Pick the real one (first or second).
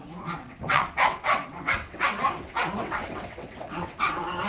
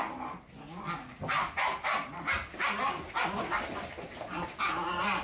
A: second